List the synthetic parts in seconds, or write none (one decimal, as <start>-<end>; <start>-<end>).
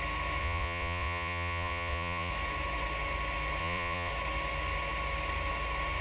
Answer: 0.4-2.3; 3.6-4.1